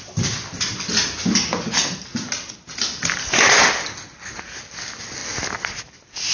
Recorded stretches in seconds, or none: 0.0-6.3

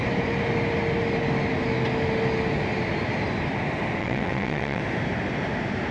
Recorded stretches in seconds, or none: 0.0-4.0; 4.8-5.9

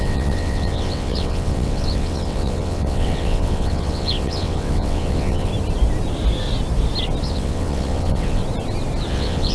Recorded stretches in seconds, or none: 5.5-7.2; 8.4-9.1

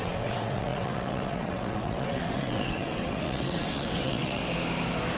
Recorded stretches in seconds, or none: 4.4-5.2